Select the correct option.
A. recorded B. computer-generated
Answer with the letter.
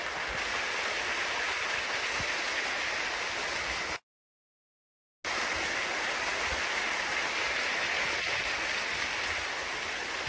A